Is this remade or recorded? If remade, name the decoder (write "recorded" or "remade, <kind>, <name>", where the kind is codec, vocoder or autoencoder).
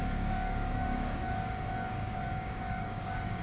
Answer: remade, codec, DAC